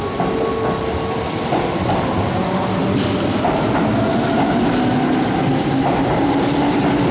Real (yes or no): yes